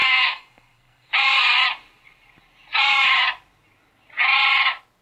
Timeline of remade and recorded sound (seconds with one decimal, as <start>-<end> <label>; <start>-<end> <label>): 0.0-1.1 remade; 1.1-5.0 recorded